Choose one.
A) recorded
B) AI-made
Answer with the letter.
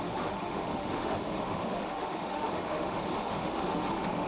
B